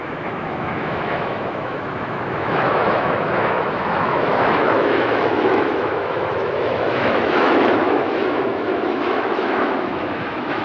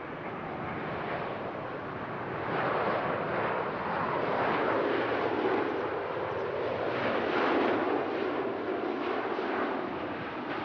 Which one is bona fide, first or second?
second